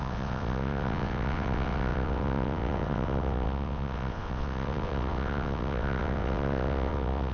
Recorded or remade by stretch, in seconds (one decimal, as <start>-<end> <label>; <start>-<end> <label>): 0.0-7.3 remade